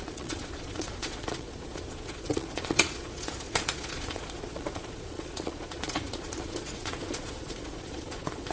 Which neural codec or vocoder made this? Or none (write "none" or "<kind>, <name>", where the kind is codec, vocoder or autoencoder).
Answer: vocoder, Vocos